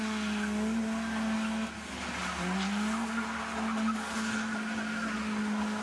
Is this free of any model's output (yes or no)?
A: yes